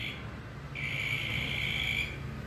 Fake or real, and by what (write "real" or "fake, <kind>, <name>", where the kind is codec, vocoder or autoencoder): real